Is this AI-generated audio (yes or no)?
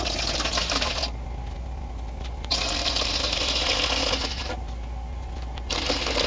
no